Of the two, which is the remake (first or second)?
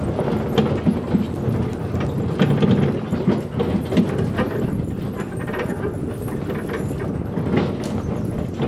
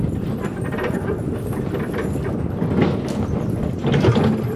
second